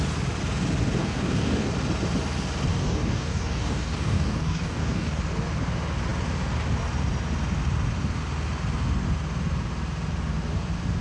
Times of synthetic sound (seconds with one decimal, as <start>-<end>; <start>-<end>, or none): 1.0-1.7; 2.7-5.2